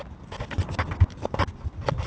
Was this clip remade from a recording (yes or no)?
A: no